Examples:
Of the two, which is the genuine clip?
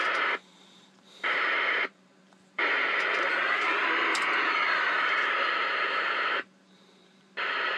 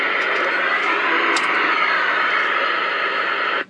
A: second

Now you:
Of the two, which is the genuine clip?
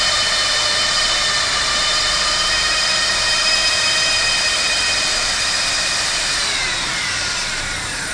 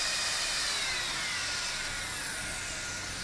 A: second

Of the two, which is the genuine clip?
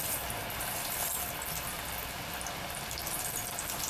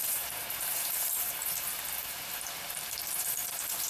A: first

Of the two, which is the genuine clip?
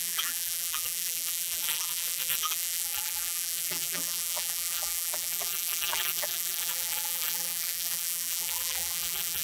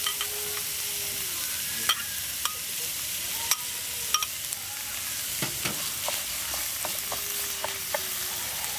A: second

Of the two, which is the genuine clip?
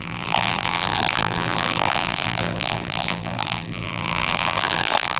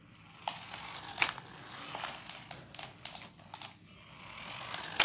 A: second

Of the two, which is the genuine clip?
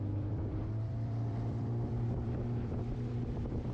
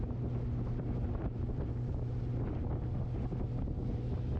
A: second